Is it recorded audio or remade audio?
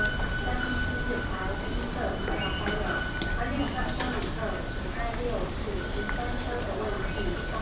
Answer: recorded